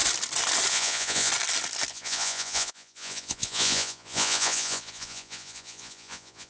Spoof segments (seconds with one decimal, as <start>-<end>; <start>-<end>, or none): 0.7-1.3; 1.9-6.5